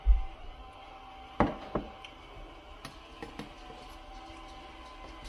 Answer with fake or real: real